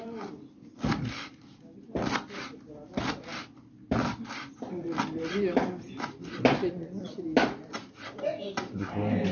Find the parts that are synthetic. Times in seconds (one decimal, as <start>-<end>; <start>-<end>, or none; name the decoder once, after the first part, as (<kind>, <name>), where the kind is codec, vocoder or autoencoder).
6.6-7.2 (vocoder, Vocos)

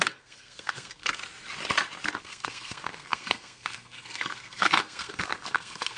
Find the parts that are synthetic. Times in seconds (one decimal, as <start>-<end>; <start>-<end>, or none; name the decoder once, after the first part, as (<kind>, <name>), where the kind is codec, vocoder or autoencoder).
0.0-1.2 (codec, SNAC); 2.2-6.0

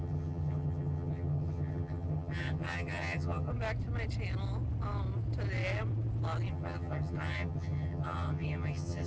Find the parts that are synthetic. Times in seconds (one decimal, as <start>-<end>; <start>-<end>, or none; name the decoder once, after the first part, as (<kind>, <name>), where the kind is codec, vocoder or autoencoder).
0.0-3.5 (vocoder, HiFi-GAN); 6.5-9.1

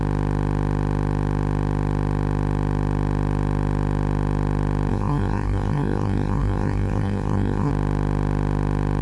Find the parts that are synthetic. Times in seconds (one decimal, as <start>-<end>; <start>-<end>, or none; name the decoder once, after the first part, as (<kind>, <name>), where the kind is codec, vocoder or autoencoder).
4.9-7.7 (codec, SNAC)

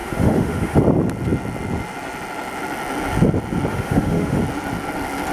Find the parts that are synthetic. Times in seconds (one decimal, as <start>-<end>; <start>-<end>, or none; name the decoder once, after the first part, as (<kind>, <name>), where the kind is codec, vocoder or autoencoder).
0.0-0.8 (autoencoder, DAC-VAE); 3.7-4.4

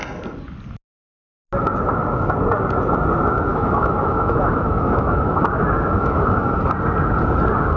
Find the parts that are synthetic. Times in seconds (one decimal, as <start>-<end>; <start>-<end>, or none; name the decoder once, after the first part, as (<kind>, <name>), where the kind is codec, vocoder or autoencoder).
3.5-6.6 (autoencoder, DAC-VAE)